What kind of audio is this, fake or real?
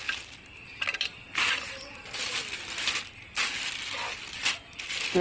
real